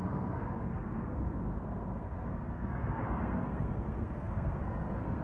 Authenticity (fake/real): fake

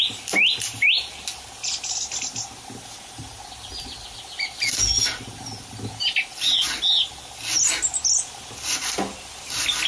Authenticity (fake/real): real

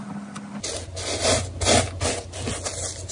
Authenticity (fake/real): real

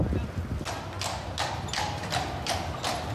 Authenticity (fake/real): real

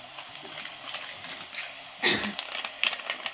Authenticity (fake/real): real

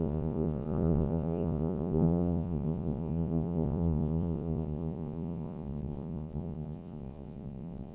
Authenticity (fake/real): fake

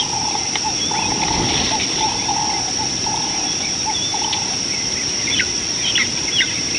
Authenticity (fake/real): real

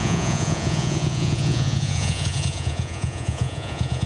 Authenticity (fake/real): fake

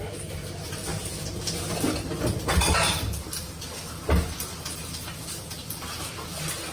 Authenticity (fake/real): real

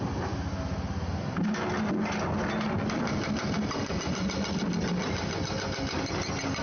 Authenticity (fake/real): real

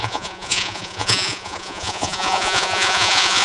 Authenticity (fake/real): fake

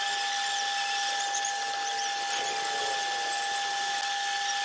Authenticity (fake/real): real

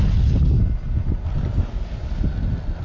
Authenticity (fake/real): real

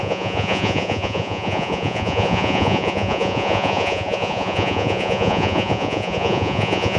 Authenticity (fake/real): fake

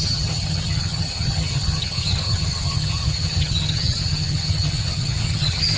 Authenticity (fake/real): fake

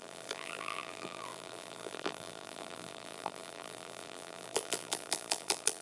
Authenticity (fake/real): fake